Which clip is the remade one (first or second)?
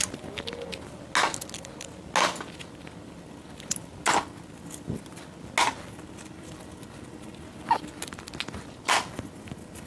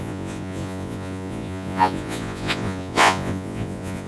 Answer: second